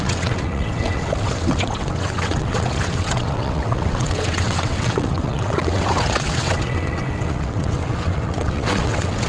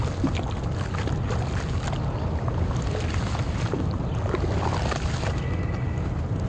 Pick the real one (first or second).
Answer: second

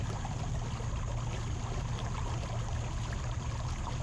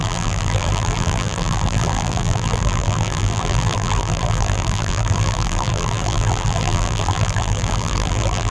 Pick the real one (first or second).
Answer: first